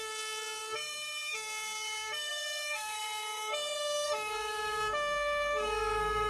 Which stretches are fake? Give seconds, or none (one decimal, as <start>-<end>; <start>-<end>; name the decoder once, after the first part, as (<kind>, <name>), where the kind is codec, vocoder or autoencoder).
0.0-6.3 (codec, SNAC)